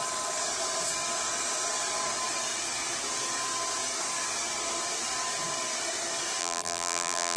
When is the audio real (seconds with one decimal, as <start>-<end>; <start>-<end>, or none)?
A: 0.0-6.4